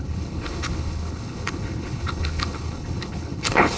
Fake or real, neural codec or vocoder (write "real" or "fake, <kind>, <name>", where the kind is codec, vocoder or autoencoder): fake, codec, HILCodec